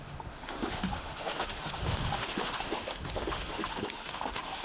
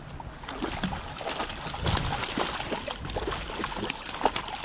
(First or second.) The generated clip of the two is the first